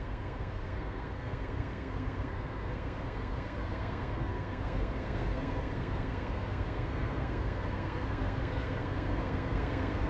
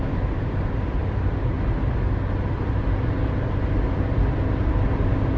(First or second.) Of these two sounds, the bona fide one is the second